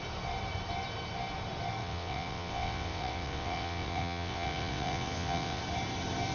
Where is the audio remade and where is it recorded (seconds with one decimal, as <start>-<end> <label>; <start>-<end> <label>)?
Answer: 0.0-1.8 recorded; 1.8-5.6 remade; 5.6-6.3 recorded